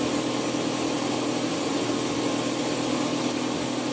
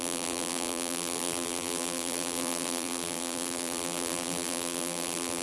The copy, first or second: second